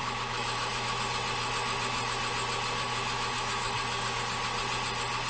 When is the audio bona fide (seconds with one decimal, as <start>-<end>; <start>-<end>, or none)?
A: 1.0-2.9; 4.2-5.3